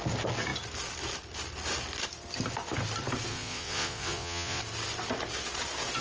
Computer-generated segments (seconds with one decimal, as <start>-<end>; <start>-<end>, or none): 3.3-4.6